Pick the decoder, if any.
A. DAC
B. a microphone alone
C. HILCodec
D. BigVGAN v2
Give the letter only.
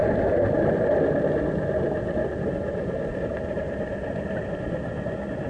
B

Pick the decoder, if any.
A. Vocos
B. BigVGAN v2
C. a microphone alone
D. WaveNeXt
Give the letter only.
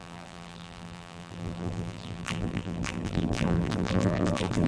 B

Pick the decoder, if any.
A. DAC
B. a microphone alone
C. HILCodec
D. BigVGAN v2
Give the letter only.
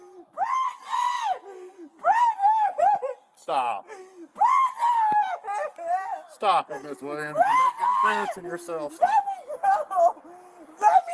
B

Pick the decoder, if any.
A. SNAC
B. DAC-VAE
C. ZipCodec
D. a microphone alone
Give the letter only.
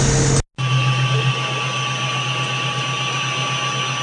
D